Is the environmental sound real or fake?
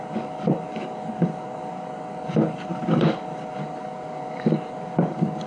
fake